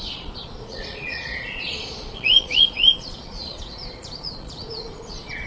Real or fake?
fake